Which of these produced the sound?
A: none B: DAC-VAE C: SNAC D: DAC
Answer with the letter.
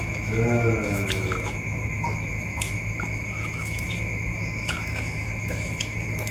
B